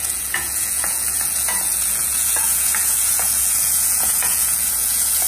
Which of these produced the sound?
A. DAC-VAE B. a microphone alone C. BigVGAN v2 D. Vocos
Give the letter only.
D